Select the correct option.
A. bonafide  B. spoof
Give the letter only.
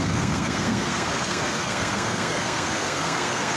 B